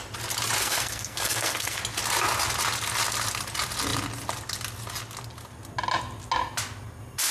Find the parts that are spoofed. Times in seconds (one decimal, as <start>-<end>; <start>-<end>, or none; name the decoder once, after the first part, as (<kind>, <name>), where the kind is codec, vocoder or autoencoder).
0.6-1.8 (codec, SNAC)